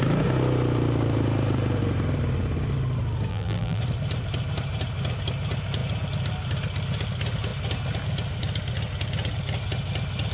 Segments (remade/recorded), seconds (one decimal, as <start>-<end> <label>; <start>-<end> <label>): 0.0-3.3 recorded; 3.3-3.8 remade; 3.8-10.3 recorded